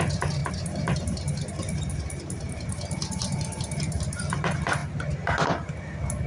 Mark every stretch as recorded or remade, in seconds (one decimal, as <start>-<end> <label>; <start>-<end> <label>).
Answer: 0.0-0.4 recorded; 0.4-4.2 remade; 4.2-6.3 recorded

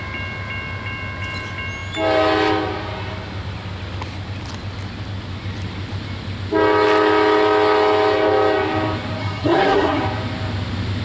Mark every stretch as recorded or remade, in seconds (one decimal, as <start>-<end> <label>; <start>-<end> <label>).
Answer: 0.0-9.2 recorded; 9.2-10.0 remade; 10.0-11.0 recorded

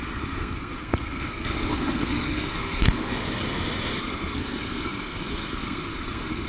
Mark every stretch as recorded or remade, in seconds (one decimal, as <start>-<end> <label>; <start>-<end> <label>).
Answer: 0.0-3.1 remade; 3.1-4.0 recorded; 4.0-6.5 remade

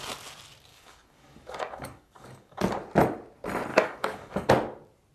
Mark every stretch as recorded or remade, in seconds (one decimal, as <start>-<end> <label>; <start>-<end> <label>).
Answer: 0.0-0.7 recorded; 0.7-2.6 remade; 2.6-3.7 recorded; 3.7-4.5 remade; 4.5-5.1 recorded

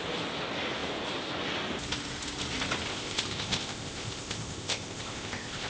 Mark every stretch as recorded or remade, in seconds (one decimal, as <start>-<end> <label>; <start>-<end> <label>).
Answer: 0.0-2.9 recorded; 2.9-5.7 remade

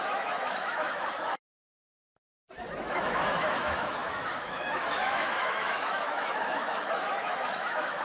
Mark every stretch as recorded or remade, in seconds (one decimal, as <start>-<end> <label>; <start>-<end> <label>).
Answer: 0.0-1.8 remade; 1.8-2.8 recorded; 2.8-8.0 remade

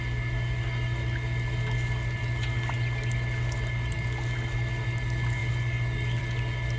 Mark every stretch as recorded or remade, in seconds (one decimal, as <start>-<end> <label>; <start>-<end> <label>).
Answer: 0.0-6.8 recorded

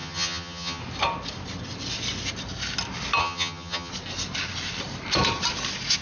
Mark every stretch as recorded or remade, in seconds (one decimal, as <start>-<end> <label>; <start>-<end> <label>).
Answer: 0.0-0.8 remade; 0.8-3.2 recorded; 3.2-3.9 remade; 3.9-6.0 recorded